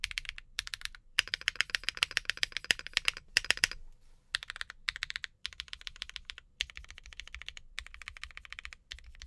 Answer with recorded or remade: remade